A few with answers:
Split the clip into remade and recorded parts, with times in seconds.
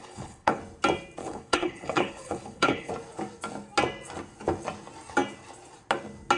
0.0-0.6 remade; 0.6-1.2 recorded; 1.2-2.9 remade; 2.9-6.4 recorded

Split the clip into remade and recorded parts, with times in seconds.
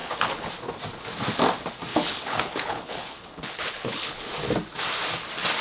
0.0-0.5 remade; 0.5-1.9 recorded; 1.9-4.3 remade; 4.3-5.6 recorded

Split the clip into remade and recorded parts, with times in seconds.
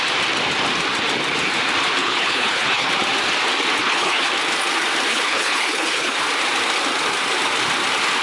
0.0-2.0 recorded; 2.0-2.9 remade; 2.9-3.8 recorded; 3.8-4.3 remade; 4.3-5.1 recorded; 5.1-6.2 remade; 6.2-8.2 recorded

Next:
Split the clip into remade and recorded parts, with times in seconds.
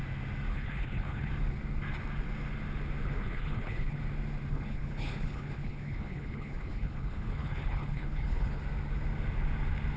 0.0-0.5 recorded; 0.5-1.3 remade; 1.3-3.0 recorded; 3.0-4.0 remade; 4.0-4.5 recorded; 4.5-8.6 remade; 8.6-10.0 recorded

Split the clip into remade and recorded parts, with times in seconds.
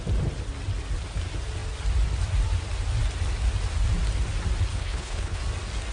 0.0-4.7 recorded; 4.7-5.4 remade; 5.4-5.9 recorded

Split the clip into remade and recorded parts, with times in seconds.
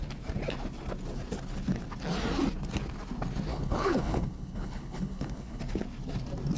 0.0-3.5 recorded; 3.5-5.6 remade; 5.6-6.6 recorded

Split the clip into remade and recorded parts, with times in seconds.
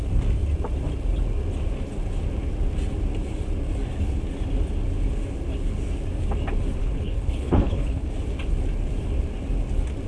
0.0-6.8 recorded; 6.8-8.1 remade; 8.1-10.1 recorded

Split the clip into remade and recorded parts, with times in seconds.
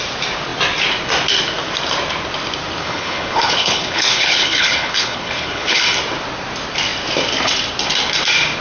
0.0-2.8 recorded; 2.8-5.8 remade; 5.8-8.6 recorded